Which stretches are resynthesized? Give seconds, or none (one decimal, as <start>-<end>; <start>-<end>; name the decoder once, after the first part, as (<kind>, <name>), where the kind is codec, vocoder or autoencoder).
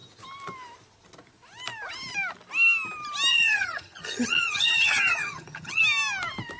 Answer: 3.3-5.8 (vocoder, HiFi-GAN)